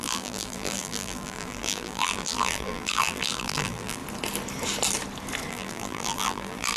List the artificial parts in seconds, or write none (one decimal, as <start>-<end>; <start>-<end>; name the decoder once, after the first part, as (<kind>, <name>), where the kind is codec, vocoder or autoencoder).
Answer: 0.0-4.0 (vocoder, BigVGAN v2); 5.5-6.8